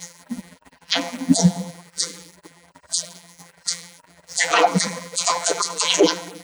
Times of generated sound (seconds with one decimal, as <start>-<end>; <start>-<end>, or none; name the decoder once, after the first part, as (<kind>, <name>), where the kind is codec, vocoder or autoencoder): 0.0-6.4 (vocoder, BigVGAN v2)